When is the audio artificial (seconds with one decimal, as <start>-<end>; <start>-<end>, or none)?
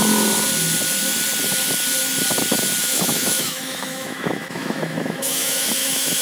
2.8-6.2